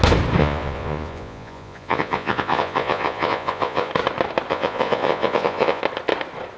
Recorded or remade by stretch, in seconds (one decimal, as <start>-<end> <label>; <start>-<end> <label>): 0.0-0.4 recorded; 0.4-3.9 remade; 3.9-4.5 recorded; 4.5-5.8 remade; 5.8-6.6 recorded